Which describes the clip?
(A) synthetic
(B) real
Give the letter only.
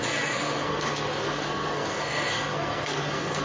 A